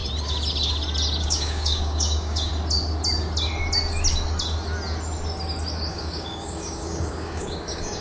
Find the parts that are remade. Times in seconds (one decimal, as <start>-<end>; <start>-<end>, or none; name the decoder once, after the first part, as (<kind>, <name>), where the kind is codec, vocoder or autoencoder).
1.2-2.5 (codec, DAC); 5.9-8.0